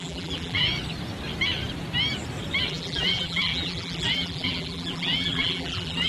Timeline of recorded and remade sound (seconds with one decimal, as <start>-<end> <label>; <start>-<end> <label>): 0.0-0.6 remade; 0.6-2.7 recorded; 2.7-6.1 remade